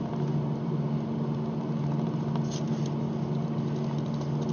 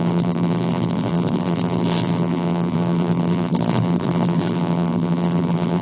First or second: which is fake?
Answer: second